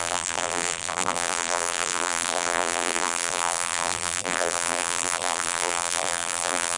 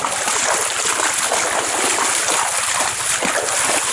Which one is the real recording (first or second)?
second